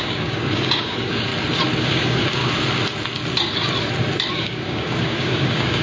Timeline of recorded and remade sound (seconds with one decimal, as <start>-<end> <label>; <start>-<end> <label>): 0.0-1.3 remade; 1.3-1.8 recorded; 1.8-2.4 remade; 2.4-4.3 recorded; 4.3-5.8 remade